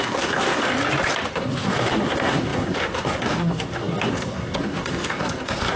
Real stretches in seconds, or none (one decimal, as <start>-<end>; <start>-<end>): 0.6-1.3